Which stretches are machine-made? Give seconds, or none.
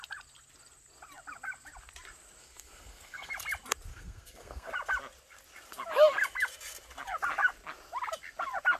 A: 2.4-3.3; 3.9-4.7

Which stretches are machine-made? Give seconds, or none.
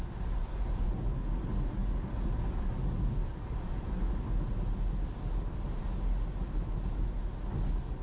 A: 1.8-4.0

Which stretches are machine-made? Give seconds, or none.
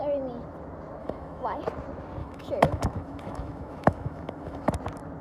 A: 1.0-1.6; 2.2-4.7